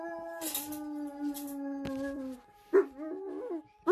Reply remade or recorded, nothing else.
recorded